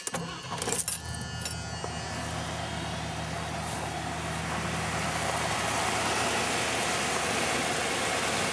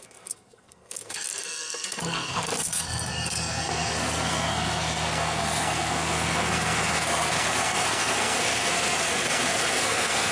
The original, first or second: first